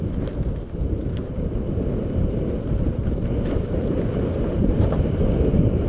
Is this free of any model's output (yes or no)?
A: no